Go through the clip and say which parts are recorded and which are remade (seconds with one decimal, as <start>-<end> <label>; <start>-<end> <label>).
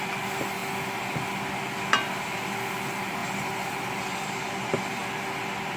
0.0-3.2 recorded; 3.2-4.8 remade; 4.8-5.8 recorded